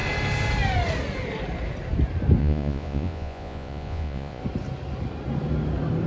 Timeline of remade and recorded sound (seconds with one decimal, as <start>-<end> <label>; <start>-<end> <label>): 0.0-2.4 recorded; 2.4-4.4 remade; 4.4-6.1 recorded